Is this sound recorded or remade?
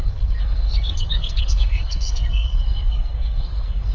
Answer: remade